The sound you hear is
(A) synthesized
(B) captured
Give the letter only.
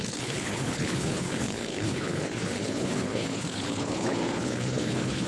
A